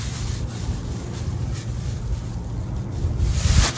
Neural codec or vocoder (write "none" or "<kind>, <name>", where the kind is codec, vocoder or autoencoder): none